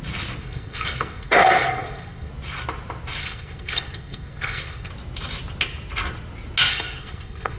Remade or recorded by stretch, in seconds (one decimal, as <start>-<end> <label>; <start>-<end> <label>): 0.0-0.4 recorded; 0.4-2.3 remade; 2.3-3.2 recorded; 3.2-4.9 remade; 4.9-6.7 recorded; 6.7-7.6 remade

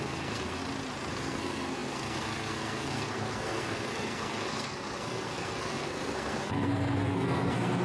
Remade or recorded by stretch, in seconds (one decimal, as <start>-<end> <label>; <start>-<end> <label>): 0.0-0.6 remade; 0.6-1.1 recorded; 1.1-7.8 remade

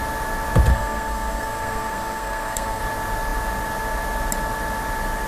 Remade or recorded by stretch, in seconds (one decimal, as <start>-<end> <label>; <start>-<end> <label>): 0.0-0.7 recorded; 0.7-2.8 remade; 2.8-5.3 recorded